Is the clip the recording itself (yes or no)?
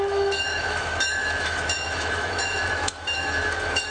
no